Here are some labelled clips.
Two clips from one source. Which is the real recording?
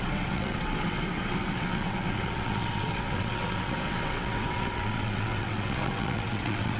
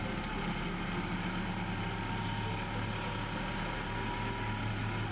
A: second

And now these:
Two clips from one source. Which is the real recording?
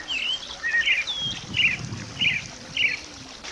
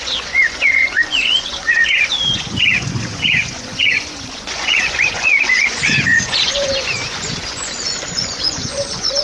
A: first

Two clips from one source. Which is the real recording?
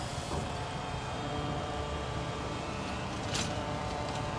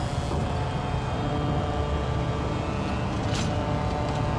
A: second